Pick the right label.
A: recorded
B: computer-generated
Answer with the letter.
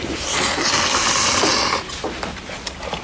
A